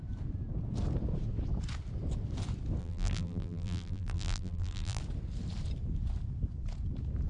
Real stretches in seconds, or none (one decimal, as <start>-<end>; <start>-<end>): 0.0-2.8; 5.0-7.3